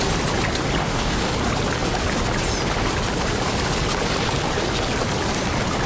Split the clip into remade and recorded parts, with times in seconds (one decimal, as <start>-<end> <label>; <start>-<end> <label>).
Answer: 0.0-0.8 recorded; 0.8-1.3 remade; 1.3-5.9 recorded

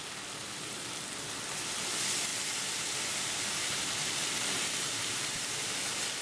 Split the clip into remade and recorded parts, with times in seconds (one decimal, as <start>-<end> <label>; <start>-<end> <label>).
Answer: 0.0-0.4 recorded; 0.4-0.9 remade; 0.9-2.3 recorded; 2.3-5.7 remade; 5.7-6.2 recorded

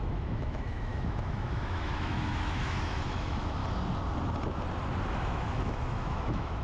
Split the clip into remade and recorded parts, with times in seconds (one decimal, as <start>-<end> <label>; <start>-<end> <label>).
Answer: 0.0-3.6 remade; 3.6-5.1 recorded; 5.1-6.6 remade

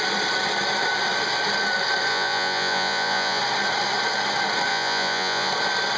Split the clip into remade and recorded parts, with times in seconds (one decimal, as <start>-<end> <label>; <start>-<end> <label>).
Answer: 0.0-2.1 recorded; 2.1-3.4 remade; 3.4-4.7 recorded; 4.7-5.5 remade; 5.5-6.0 recorded

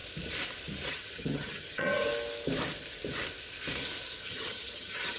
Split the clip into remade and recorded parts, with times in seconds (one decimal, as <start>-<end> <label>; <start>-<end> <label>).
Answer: 0.0-0.9 recorded; 0.9-2.1 remade; 2.1-4.2 recorded; 4.2-5.2 remade

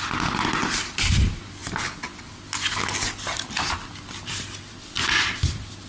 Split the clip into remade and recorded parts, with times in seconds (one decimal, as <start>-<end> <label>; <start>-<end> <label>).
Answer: 0.0-5.9 recorded

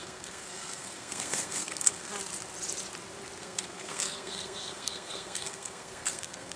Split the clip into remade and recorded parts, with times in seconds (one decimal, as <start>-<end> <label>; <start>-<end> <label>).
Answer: 0.0-2.1 remade; 2.1-3.4 recorded; 3.4-6.6 remade